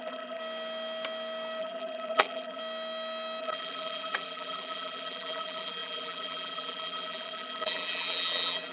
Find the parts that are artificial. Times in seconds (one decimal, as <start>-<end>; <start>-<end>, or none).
0.0-0.4; 1.6-2.6; 3.4-8.7